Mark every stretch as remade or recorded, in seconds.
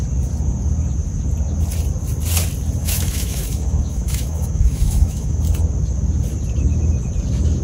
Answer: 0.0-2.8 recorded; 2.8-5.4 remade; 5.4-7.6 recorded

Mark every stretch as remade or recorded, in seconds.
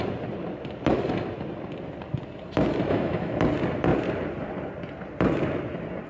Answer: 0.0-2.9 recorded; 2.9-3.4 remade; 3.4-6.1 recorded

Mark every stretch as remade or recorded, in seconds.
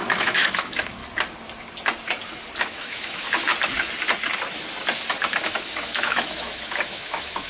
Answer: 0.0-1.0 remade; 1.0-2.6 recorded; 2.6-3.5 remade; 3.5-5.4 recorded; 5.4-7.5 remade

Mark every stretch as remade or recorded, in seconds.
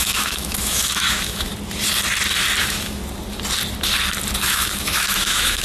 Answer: 0.0-1.5 remade; 1.5-2.6 recorded; 2.6-3.0 remade; 3.0-4.4 recorded; 4.4-5.6 remade